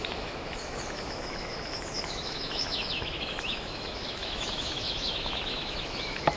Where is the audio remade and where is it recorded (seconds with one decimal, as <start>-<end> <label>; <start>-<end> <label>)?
0.0-6.4 remade